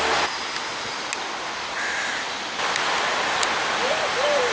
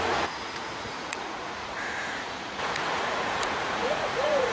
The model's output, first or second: second